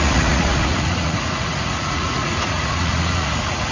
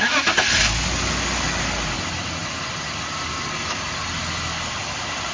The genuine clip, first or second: second